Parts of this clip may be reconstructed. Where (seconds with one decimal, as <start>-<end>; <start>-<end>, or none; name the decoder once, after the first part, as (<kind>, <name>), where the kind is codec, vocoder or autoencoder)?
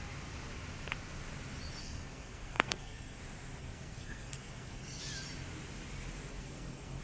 1.8-3.2 (codec, SNAC); 3.6-5.0; 6.3-7.0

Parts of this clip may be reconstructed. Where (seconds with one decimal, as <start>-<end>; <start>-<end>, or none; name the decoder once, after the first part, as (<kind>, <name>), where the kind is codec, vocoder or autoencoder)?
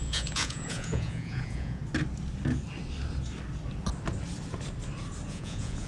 0.0-1.8 (vocoder, Vocos); 5.3-5.9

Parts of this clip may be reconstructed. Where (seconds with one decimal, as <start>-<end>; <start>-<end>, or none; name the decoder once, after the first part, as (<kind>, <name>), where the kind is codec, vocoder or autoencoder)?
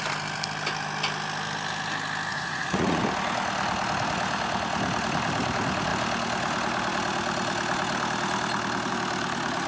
2.3-3.0 (vocoder, Vocos)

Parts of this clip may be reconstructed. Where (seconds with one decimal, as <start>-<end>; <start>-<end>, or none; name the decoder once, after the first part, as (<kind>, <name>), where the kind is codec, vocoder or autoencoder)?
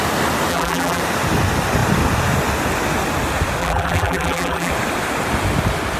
0.5-1.0 (vocoder, BigVGAN v2); 3.6-4.7